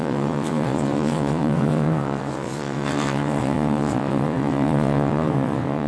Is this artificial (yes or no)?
yes